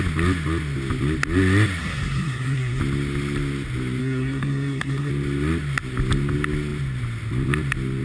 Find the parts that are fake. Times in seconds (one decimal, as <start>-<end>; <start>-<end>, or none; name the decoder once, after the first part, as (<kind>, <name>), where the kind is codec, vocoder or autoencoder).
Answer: 1.8-2.8 (codec, SNAC); 4.0-5.1